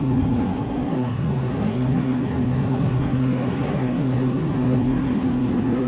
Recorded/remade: remade